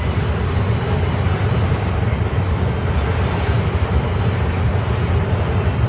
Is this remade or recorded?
recorded